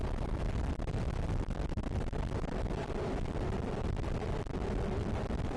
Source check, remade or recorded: recorded